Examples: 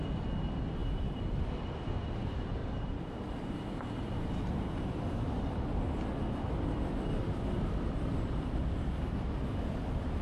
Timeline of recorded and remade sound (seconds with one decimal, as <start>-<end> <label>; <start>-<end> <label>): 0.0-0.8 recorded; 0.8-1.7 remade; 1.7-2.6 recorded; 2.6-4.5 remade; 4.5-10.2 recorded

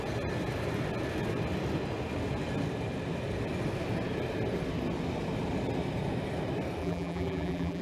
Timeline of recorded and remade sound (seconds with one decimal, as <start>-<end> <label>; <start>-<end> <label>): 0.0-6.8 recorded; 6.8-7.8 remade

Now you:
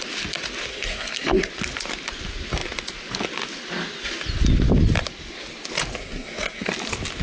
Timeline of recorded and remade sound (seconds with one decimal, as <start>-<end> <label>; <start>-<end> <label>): 0.0-0.7 recorded; 0.7-1.5 remade; 1.5-6.0 recorded; 6.0-6.7 remade; 6.7-7.2 recorded